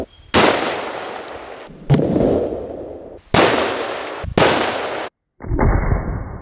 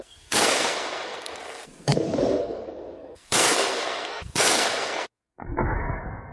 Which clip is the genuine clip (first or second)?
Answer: first